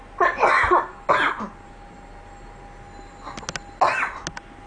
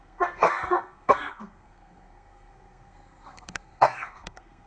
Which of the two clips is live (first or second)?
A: first